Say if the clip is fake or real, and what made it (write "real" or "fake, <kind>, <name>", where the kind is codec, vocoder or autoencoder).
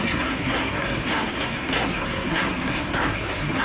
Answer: fake, codec, SNAC